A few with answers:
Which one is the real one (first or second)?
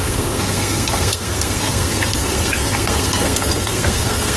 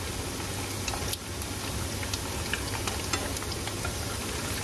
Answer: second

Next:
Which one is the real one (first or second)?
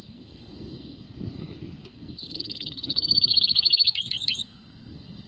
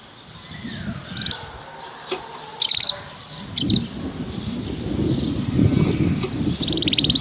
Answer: second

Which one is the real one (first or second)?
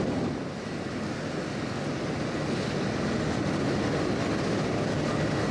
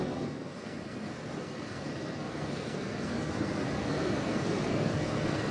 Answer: first